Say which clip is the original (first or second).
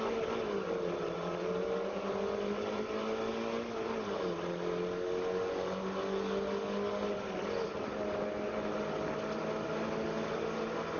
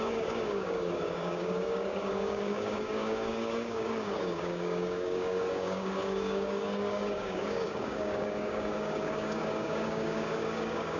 first